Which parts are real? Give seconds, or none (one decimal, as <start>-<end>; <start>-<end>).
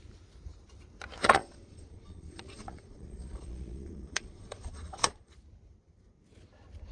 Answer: 0.0-1.2; 5.3-6.9